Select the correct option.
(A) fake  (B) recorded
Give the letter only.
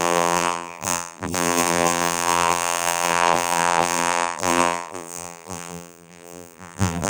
A